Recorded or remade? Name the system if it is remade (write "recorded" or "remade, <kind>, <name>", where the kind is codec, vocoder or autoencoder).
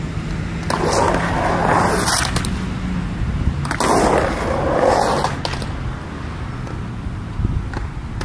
recorded